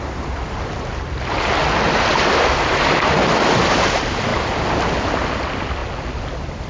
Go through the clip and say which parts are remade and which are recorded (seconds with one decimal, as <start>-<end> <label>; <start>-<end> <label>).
0.0-6.7 recorded